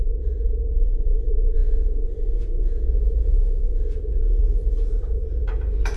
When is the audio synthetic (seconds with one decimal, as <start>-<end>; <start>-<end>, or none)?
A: 0.0-6.0